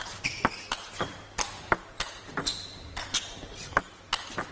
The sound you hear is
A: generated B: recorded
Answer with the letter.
B